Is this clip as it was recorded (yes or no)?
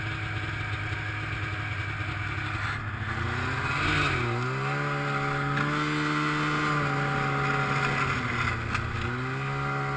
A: yes